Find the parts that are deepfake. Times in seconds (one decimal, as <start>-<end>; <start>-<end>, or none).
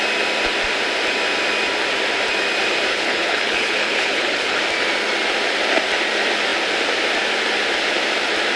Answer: 2.9-4.6